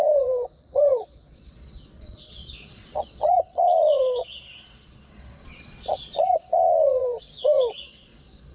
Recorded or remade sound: remade